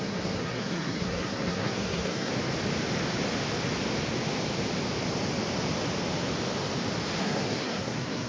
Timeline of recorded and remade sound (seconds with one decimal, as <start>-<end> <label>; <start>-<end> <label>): 0.0-2.3 remade; 2.3-7.2 recorded; 7.2-8.3 remade